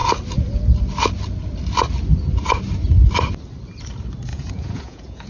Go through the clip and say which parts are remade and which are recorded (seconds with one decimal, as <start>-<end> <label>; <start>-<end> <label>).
0.0-4.3 recorded; 4.3-5.3 remade